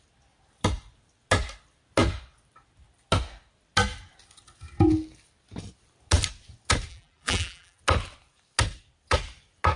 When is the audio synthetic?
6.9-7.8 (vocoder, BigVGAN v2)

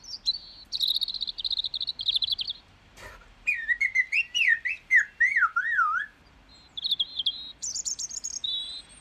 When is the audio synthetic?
0.0-9.0 (vocoder, BigVGAN v2)

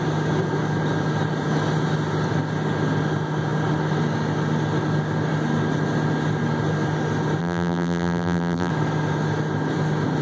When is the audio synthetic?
7.4-8.7 (vocoder, BigVGAN v2)

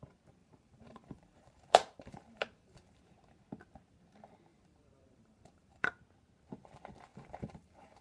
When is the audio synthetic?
0.4-3.0 (vocoder, BigVGAN v2); 4.5-6.0; 7.1-8.0

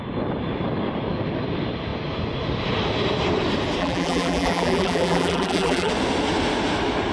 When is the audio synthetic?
3.8-5.9 (vocoder, BigVGAN v2)

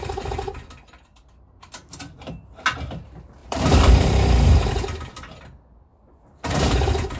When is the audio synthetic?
1.1-2.3 (vocoder, BigVGAN v2); 3.4-4.7